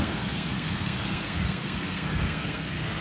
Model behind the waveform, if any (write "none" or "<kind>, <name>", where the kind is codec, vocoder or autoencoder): codec, SNAC